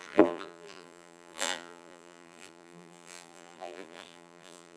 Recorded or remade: remade